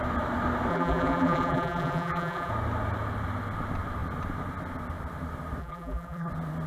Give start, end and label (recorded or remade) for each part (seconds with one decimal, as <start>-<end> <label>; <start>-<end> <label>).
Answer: 0.0-0.7 recorded; 0.7-2.5 remade; 2.5-5.6 recorded; 5.6-6.3 remade; 6.3-6.7 recorded